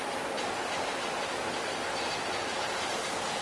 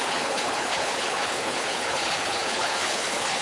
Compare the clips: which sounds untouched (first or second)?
first